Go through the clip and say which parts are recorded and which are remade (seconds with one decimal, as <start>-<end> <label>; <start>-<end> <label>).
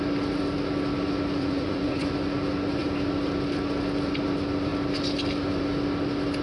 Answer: 0.0-1.4 recorded; 1.4-2.1 remade; 2.1-6.4 recorded